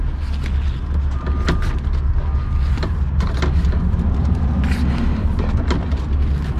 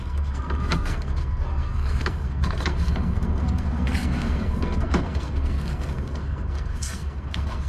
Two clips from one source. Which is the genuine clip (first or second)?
first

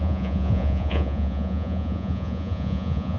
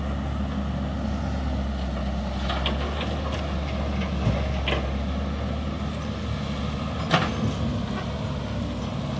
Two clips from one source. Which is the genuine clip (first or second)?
second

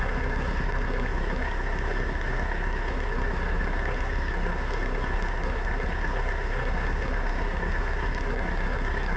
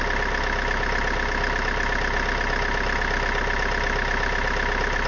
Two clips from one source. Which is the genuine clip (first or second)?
second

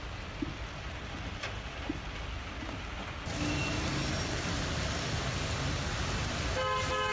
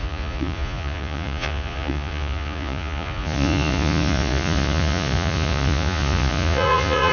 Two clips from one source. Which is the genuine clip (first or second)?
first